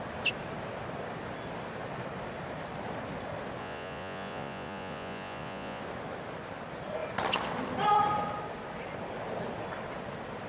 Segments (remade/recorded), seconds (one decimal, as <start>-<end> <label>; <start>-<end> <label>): 0.0-3.6 recorded; 3.6-5.8 remade; 5.8-10.5 recorded